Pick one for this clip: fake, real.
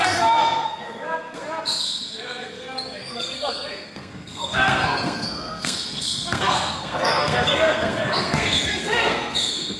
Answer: fake